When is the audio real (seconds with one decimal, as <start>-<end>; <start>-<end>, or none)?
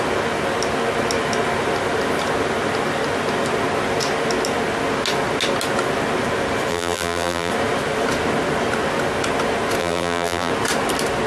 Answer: 0.0-6.7; 7.5-9.8; 10.5-11.3